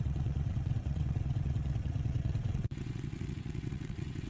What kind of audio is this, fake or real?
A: fake